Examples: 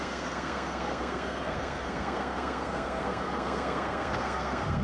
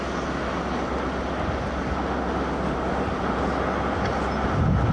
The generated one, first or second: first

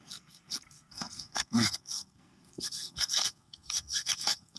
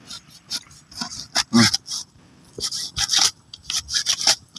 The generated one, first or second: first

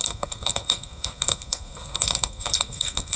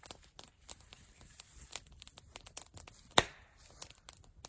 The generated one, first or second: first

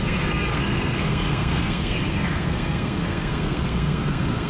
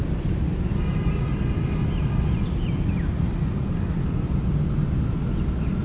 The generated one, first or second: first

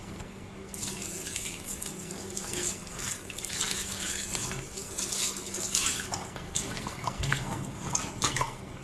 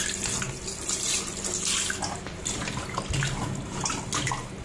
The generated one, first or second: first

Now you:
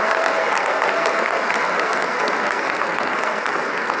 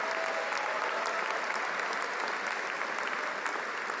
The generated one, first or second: first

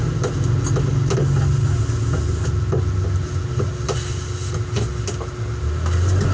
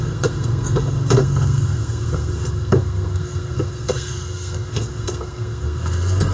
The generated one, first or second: second